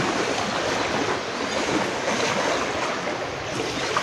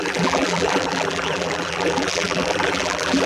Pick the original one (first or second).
first